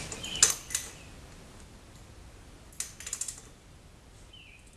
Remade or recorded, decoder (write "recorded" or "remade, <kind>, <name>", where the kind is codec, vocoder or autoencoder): recorded